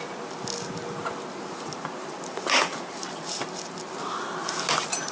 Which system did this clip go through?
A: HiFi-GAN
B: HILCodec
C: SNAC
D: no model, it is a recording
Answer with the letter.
D